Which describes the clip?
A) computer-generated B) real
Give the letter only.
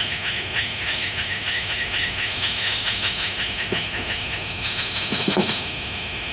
A